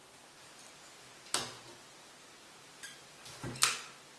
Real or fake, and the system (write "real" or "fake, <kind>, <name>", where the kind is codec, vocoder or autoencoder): fake, vocoder, BigVGAN v2